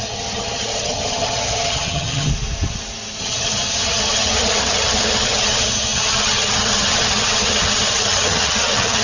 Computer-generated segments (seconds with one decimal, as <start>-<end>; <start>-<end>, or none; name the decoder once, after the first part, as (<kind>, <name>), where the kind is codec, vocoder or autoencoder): 0.0-2.3 (vocoder, HiFi-GAN); 3.2-9.0